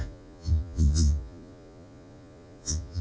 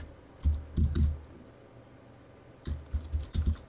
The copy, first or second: first